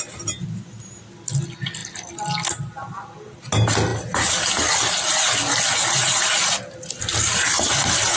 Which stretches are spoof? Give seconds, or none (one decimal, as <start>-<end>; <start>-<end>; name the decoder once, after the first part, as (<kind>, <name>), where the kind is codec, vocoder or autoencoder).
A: none